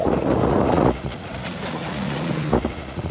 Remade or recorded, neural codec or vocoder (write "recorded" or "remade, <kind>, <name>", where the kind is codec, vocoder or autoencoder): remade, vocoder, Vocos